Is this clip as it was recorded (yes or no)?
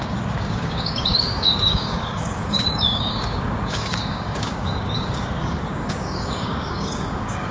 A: no